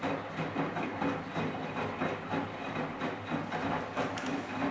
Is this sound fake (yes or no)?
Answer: no